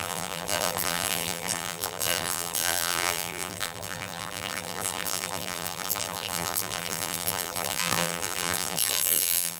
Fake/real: fake